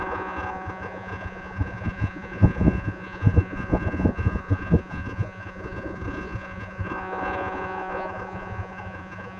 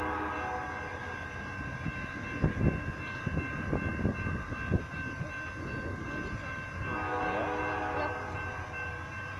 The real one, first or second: second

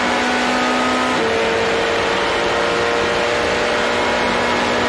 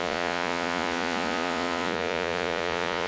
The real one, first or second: first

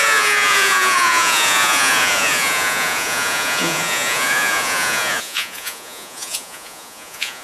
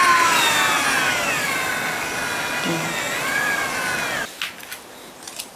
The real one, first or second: second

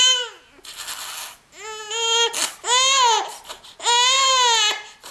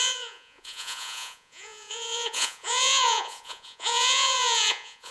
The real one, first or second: first